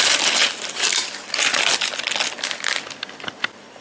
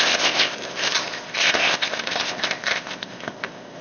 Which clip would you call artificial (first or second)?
second